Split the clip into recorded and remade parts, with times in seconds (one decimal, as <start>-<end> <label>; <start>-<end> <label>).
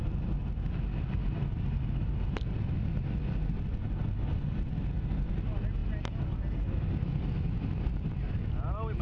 0.0-9.0 recorded